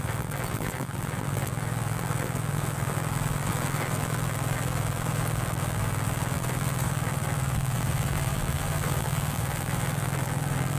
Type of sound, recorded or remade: remade